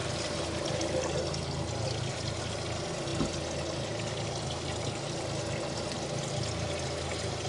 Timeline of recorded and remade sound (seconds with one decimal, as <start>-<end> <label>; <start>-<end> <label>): 0.0-0.7 remade; 0.7-7.5 recorded